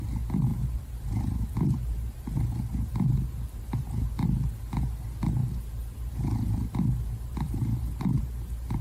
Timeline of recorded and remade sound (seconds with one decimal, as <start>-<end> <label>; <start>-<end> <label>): 0.0-0.5 recorded; 0.5-4.7 remade; 4.7-5.4 recorded; 5.4-8.8 remade